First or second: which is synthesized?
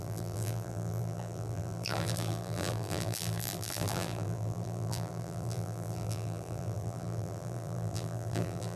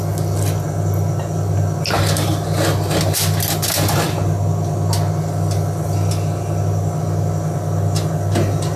first